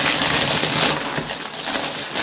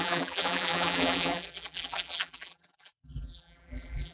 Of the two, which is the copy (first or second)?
second